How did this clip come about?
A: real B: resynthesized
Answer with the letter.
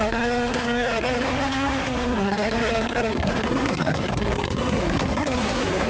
B